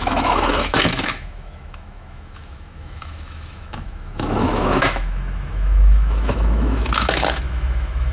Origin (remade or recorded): remade